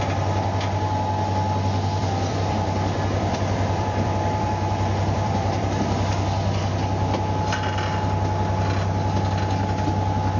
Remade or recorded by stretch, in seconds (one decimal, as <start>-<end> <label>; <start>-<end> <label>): 0.0-2.0 recorded; 2.0-5.7 remade; 5.7-10.4 recorded